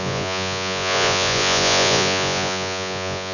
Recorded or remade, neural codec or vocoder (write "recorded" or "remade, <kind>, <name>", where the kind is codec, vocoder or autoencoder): remade, vocoder, Vocos